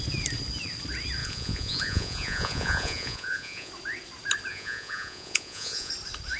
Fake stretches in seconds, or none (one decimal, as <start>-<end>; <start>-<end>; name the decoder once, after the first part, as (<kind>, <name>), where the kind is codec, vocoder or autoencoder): 1.2-3.7 (vocoder, Vocos); 4.5-5.9